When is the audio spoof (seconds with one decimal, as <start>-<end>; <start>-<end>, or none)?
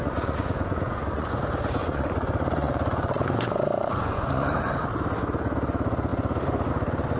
0.0-1.4; 1.8-4.8